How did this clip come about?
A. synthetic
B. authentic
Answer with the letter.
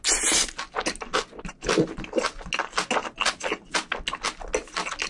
B